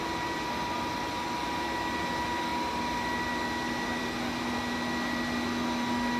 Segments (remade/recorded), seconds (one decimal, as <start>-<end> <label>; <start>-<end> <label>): 0.0-2.5 recorded; 2.5-4.0 remade; 4.0-6.2 recorded